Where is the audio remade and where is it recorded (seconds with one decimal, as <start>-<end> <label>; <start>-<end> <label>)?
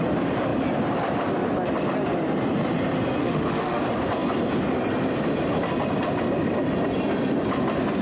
0.0-3.2 recorded; 3.2-3.8 remade; 3.8-8.0 recorded